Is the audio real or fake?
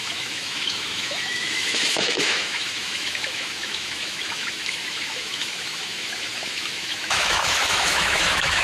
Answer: fake